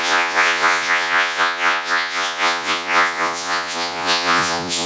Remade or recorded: remade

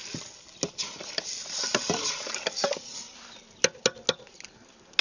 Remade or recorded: recorded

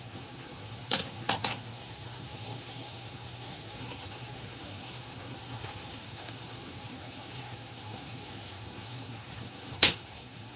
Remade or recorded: remade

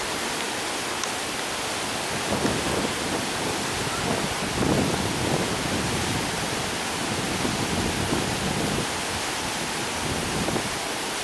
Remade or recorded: recorded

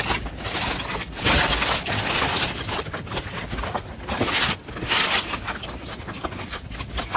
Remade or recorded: recorded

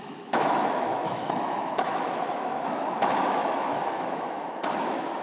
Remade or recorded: remade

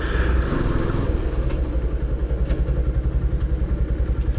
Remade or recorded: recorded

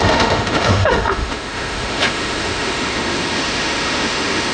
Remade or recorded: remade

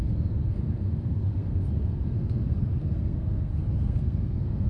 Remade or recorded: remade